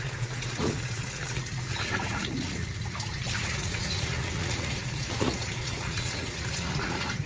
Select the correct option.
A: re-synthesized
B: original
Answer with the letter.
A